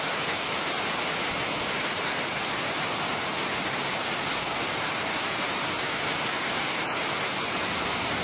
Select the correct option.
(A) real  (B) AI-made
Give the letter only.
A